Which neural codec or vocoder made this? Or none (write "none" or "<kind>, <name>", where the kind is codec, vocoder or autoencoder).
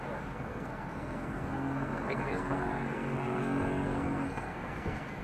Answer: codec, SNAC